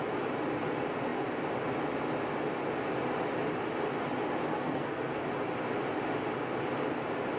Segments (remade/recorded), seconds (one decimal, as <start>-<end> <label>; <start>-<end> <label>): 0.0-4.5 recorded; 4.5-5.2 remade; 5.2-7.4 recorded

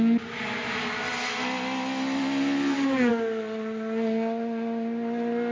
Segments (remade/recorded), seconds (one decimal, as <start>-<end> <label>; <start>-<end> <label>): 0.0-5.5 recorded

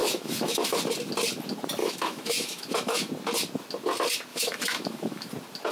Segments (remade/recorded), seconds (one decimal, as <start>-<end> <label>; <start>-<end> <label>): 0.0-0.8 remade; 0.8-1.8 recorded; 1.8-3.1 remade; 3.1-4.3 recorded; 4.3-5.3 remade; 5.3-5.7 recorded

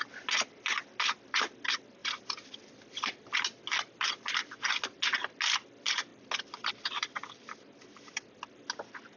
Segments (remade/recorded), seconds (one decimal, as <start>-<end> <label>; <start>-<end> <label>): 0.0-9.2 recorded

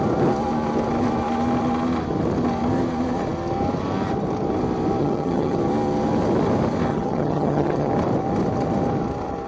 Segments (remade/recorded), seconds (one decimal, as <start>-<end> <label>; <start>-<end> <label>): 0.0-5.0 recorded; 5.0-5.6 remade; 5.6-6.9 recorded; 6.9-7.9 remade; 7.9-9.5 recorded

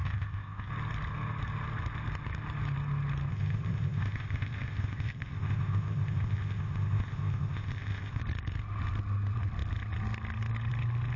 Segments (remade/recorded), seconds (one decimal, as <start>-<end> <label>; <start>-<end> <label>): 0.0-0.7 remade; 0.7-3.3 recorded; 3.3-8.2 remade; 8.2-11.2 recorded